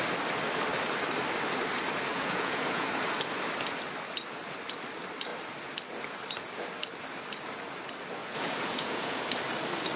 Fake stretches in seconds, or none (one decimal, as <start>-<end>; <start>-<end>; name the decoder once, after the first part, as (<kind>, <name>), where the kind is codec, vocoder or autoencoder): 2.1-2.9 (vocoder, Vocos); 8.2-9.2